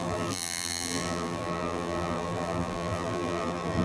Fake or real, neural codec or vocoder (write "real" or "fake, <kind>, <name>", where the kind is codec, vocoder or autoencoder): fake, vocoder, BigVGAN v2